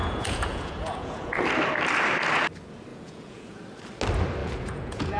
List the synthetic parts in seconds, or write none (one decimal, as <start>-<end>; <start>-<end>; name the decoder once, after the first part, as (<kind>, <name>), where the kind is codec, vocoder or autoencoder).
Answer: 0.0-1.4 (vocoder, Vocos); 2.9-3.6; 4.4-5.2